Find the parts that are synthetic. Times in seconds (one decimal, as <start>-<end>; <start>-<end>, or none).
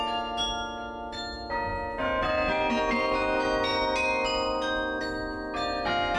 none